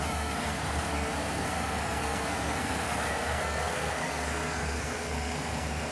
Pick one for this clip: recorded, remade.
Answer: remade